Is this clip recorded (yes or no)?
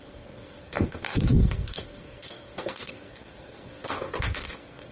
no